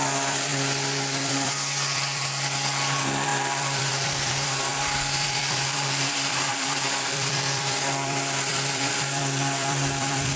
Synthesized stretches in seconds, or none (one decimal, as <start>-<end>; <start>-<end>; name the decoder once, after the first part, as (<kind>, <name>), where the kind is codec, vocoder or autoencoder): 0.0-10.4 (vocoder, BigVGAN v2)